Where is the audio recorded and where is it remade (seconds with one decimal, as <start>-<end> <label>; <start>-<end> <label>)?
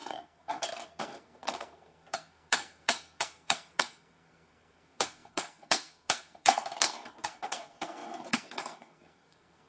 0.0-9.7 remade